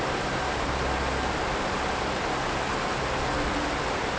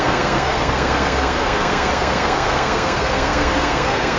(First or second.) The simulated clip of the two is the second